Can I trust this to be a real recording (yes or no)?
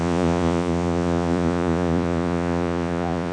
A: no